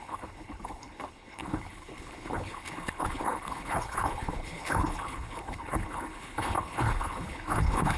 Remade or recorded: remade